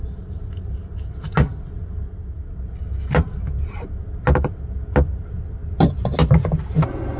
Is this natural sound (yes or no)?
yes